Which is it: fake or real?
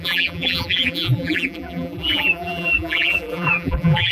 fake